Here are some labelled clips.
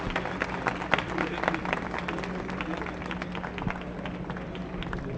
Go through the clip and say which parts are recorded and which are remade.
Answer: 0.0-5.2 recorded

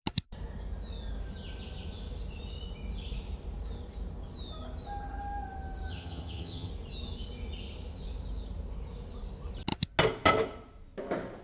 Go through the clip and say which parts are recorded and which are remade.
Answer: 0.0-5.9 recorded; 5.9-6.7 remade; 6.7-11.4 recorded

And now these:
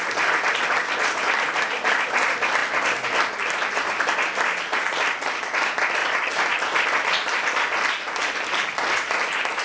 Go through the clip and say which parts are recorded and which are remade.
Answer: 0.0-9.6 recorded

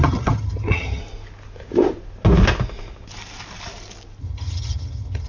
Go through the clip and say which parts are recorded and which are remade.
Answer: 0.0-1.0 remade; 1.0-4.2 recorded; 4.2-5.3 remade

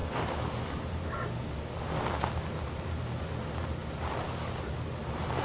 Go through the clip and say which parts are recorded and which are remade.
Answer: 0.0-5.4 recorded